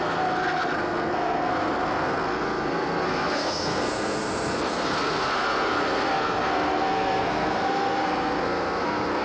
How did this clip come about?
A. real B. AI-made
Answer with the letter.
B